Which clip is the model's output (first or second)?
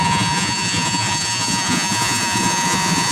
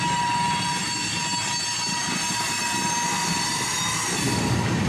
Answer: first